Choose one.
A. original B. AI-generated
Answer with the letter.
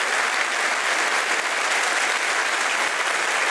A